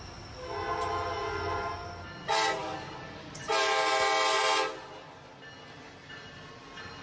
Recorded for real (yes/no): yes